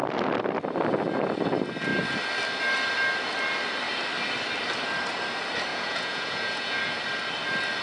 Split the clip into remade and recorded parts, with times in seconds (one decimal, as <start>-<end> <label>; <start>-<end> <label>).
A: 0.0-5.7 recorded; 5.7-7.0 remade; 7.0-7.8 recorded